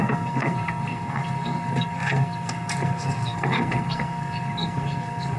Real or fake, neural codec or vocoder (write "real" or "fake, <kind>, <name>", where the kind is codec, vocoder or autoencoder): fake, codec, SNAC